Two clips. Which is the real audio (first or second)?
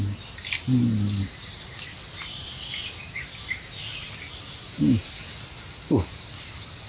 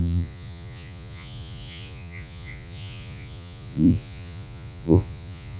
first